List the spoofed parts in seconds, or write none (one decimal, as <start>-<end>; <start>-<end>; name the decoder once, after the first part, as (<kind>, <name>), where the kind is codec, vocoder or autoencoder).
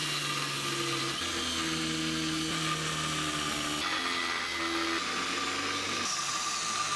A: none